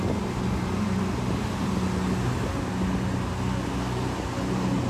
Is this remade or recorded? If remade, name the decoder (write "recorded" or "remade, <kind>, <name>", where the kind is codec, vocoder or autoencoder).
recorded